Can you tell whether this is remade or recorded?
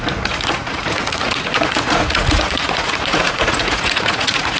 remade